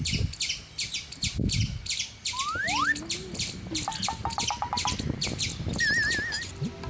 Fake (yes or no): no